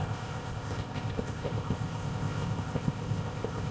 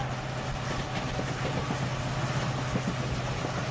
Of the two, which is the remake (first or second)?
first